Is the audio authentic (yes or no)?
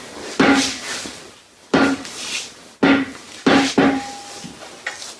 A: yes